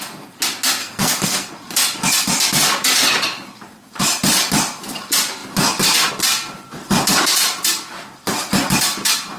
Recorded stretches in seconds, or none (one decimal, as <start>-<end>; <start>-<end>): 0.0-0.8; 1.5-9.4